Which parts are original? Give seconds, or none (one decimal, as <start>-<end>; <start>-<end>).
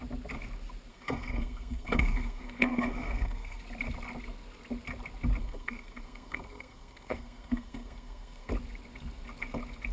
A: 0.0-0.9; 3.6-5.4; 8.5-9.9